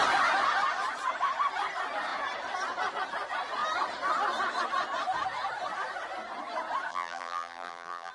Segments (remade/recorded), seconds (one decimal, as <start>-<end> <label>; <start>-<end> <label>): 0.0-6.9 recorded; 6.9-8.1 remade